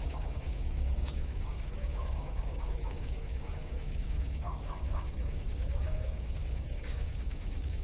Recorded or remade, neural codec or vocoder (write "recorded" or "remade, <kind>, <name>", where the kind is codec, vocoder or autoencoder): remade, codec, DAC